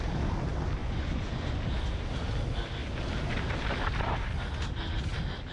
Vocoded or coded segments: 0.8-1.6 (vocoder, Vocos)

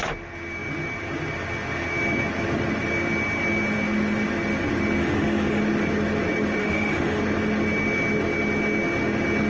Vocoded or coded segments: 5.0-5.6 (autoencoder, DAC-VAE); 6.6-7.2

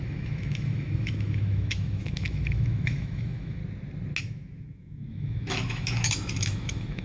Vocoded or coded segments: 0.0-3.6 (autoencoder, DAC-VAE); 4.2-7.0

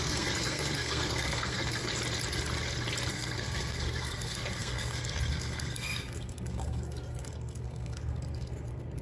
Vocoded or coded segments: 0.0-1.9 (codec, SNAC); 3.1-9.0

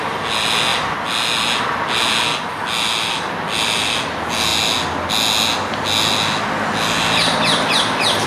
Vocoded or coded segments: none

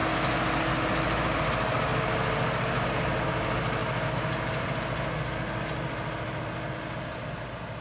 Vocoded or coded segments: none